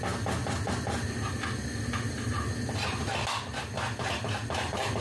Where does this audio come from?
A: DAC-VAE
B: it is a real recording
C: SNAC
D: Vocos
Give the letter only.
B